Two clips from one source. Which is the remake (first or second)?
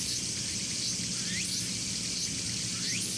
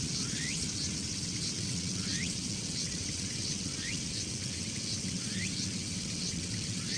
second